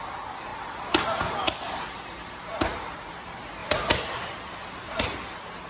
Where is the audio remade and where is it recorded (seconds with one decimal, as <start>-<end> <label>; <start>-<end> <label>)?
0.0-3.6 recorded; 3.6-5.0 remade; 5.0-5.7 recorded